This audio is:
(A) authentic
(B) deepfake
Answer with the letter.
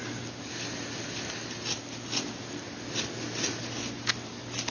A